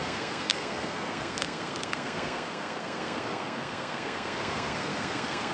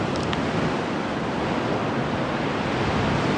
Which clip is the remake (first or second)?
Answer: first